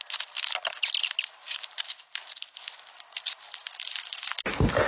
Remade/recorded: recorded